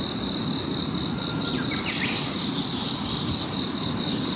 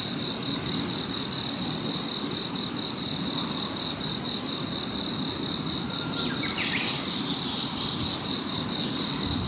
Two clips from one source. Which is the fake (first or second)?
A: second